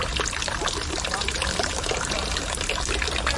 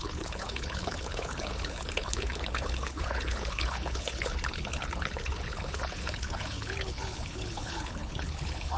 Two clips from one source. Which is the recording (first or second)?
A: first